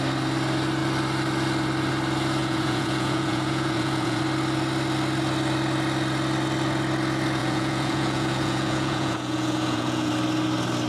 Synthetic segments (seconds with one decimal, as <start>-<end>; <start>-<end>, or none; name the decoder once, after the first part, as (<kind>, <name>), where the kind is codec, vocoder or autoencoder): 2.4-4.2 (vocoder, Vocos); 7.4-10.1

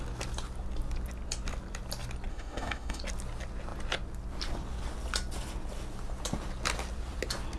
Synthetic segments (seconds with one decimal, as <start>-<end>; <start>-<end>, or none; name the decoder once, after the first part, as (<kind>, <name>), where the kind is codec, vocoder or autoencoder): 2.3-3.0 (autoencoder, DAC-VAE)

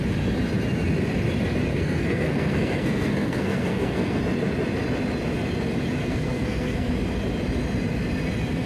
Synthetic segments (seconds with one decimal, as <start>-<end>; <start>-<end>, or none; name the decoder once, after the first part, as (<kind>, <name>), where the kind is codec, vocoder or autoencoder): 1.7-4.2 (codec, SNAC); 6.0-6.9

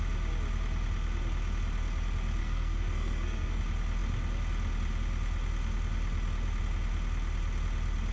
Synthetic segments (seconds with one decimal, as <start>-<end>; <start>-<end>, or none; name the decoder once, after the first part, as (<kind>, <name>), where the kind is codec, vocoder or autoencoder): 2.4-3.6 (codec, SNAC)

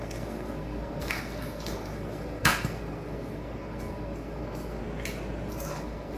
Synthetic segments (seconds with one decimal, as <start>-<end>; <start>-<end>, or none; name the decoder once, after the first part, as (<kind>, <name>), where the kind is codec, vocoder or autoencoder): 0.0-4.8 (codec, SNAC); 5.5-6.2

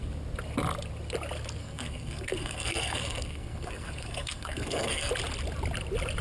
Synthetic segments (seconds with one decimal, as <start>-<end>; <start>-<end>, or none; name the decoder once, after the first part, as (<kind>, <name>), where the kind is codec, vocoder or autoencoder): 1.6-5.1 (codec, SNAC)

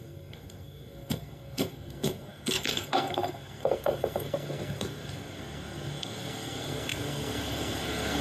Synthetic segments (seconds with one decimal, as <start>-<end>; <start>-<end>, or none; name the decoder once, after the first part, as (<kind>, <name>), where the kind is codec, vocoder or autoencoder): 0.0-8.2 (codec, SNAC)